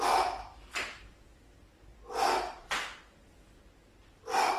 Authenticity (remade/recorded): recorded